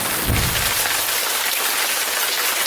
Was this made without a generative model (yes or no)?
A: yes